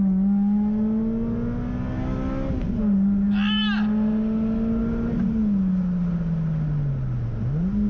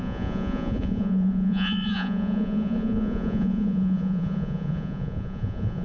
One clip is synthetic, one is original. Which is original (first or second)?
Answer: first